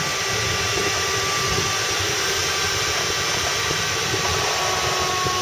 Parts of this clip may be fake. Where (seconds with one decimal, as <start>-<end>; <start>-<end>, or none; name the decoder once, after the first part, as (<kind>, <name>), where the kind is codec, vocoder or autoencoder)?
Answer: none